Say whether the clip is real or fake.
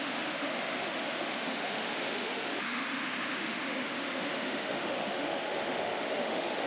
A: fake